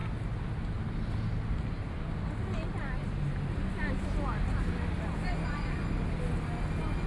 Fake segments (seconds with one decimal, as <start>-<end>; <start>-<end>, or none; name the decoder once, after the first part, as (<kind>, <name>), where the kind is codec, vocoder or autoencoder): none